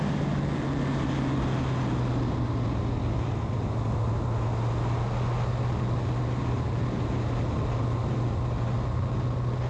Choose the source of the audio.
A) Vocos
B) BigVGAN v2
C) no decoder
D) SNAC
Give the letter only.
C